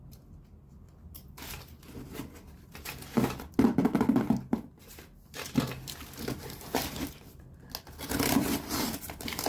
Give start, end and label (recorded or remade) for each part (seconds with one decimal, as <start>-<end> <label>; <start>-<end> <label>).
0.0-9.5 recorded